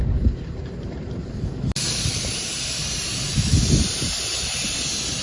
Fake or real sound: real